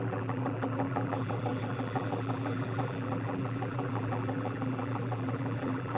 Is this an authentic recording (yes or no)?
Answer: no